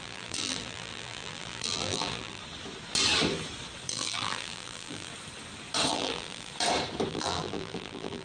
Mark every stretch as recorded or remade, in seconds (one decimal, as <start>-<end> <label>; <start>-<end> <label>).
0.0-2.4 remade; 2.4-3.9 recorded; 3.9-5.1 remade; 5.1-5.9 recorded; 5.9-6.5 remade; 6.5-7.1 recorded; 7.1-8.2 remade